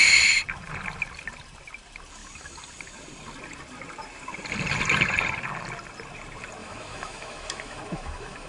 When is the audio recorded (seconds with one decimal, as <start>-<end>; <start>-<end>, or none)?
0.0-6.6